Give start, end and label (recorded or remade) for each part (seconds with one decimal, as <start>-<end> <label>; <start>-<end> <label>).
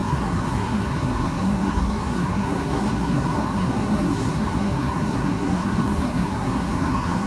0.0-7.3 remade